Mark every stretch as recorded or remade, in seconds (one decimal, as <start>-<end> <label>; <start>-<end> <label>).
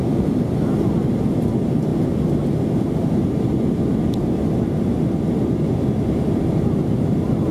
0.0-7.5 recorded